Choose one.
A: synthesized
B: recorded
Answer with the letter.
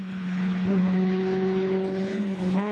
A